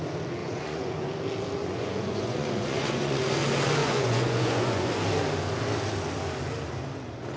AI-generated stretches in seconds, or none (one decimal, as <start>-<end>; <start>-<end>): 0.4-1.1; 1.6-3.2; 3.8-4.9